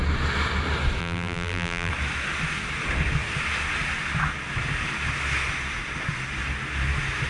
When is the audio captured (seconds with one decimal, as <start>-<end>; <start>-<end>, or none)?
0.0-1.0; 1.9-7.3